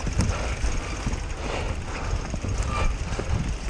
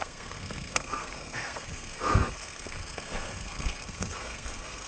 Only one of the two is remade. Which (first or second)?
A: second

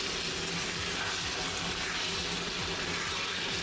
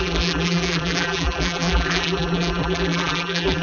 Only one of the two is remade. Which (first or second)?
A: second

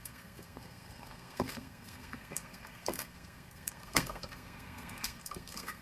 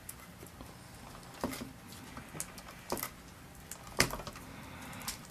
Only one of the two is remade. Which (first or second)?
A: first